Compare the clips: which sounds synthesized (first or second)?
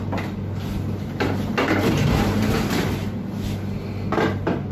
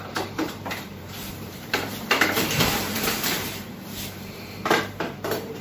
second